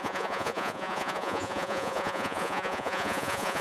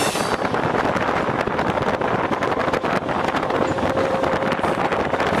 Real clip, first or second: second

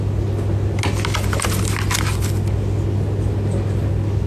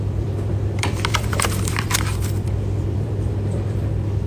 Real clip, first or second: first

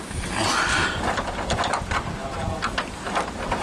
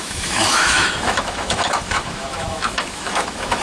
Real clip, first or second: first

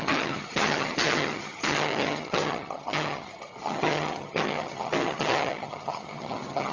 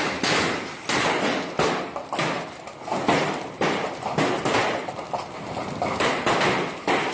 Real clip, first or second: second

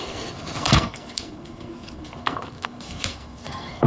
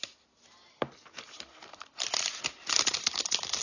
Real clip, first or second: second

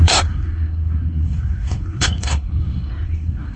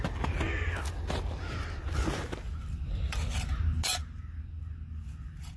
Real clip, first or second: second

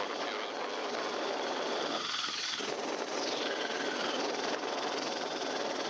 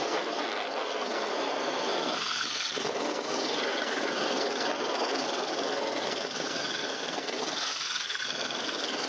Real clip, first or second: first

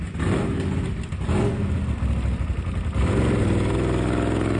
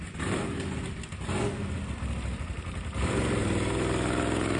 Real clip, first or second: first